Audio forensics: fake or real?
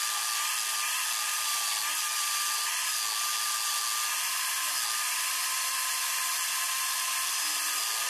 real